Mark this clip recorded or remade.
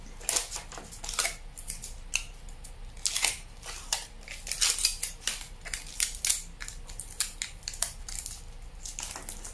recorded